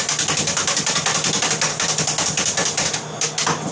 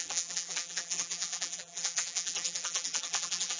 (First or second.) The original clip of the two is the first